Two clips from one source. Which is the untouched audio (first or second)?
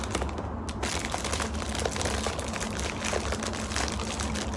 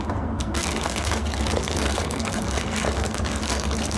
first